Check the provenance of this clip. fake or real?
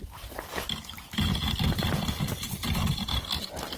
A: real